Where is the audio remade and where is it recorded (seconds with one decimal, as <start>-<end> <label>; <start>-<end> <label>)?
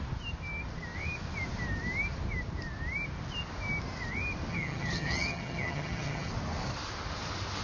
0.0-4.5 recorded; 4.5-6.3 remade; 6.3-7.6 recorded